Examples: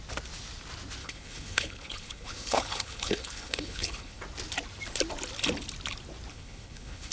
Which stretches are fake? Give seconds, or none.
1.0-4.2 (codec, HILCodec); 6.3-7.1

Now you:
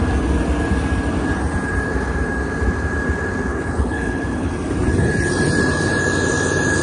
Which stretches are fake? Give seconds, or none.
3.5-4.5 (codec, HILCodec)

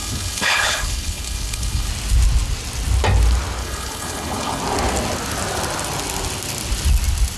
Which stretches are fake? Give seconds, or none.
0.0-1.9 (codec, HILCodec); 3.6-4.6

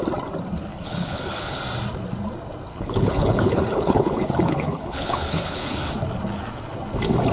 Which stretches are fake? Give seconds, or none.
0.7-1.6 (codec, HILCodec); 2.7-5.9